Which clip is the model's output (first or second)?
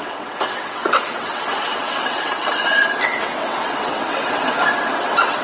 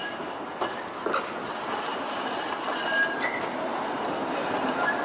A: first